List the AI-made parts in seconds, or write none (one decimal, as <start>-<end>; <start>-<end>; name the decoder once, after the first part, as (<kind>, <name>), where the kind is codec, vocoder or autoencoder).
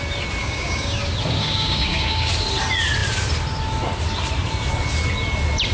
0.4-1.0 (codec, DAC); 1.4-2.3